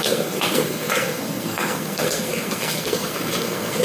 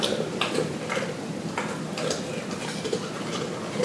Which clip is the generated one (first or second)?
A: first